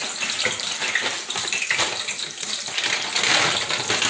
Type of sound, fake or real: real